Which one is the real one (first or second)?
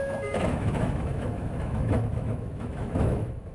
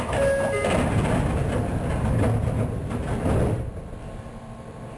second